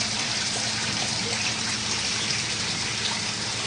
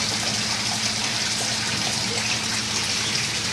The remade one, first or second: first